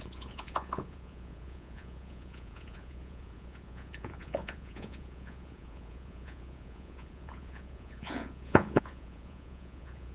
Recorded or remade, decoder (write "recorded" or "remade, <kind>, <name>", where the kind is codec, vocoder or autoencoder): remade, vocoder, Vocos